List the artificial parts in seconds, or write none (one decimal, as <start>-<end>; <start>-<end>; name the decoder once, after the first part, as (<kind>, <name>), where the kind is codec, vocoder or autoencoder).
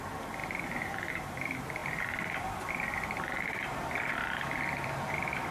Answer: 0.0-5.5 (vocoder, BigVGAN v2)